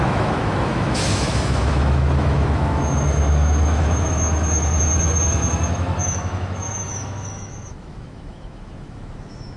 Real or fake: fake